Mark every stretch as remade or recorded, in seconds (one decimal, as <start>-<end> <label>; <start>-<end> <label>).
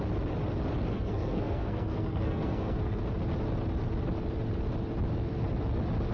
0.0-0.8 recorded; 0.8-3.0 remade; 3.0-6.1 recorded